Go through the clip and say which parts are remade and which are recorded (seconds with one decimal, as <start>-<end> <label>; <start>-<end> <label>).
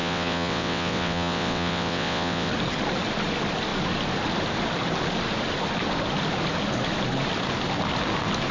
0.0-2.5 remade; 2.5-8.5 recorded